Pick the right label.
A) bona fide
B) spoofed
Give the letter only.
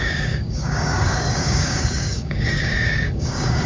B